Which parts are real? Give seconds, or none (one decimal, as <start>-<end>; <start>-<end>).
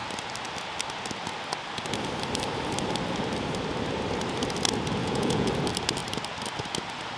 0.0-5.0; 5.5-7.2